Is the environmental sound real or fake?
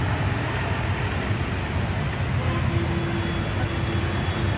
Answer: real